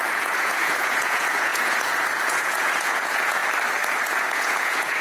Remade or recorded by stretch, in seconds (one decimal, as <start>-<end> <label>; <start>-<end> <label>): 0.0-3.4 remade; 3.4-4.0 recorded; 4.0-5.0 remade